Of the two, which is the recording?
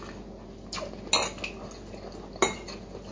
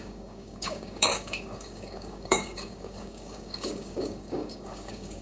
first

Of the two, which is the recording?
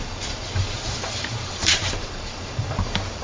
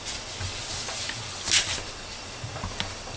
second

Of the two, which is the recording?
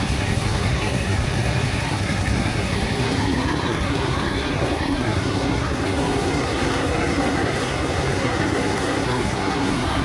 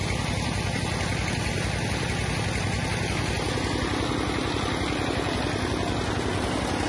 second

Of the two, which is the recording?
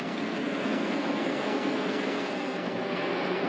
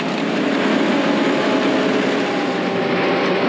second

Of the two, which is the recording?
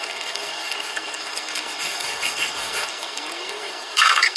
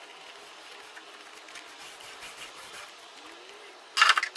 second